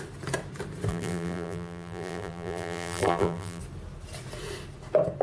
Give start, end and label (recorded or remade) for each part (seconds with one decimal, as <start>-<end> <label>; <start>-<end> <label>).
0.0-0.9 recorded; 0.9-3.6 remade; 3.6-5.2 recorded